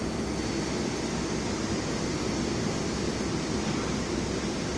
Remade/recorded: recorded